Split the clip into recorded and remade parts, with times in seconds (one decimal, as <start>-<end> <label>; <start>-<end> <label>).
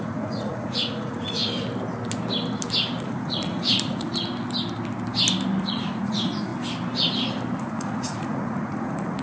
0.0-1.4 remade; 1.4-3.0 recorded; 3.0-4.1 remade; 4.1-5.6 recorded; 5.6-6.5 remade; 6.5-7.6 recorded; 7.6-9.2 remade